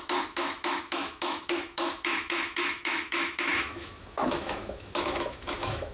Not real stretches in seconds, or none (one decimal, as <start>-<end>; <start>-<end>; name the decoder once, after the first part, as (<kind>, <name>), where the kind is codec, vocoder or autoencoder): 0.0-5.9 (autoencoder, DAC-VAE)